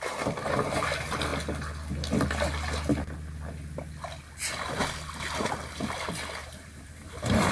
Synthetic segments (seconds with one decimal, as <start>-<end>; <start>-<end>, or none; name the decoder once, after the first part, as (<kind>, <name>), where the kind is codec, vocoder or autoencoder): 6.4-7.1 (vocoder, BigVGAN v2)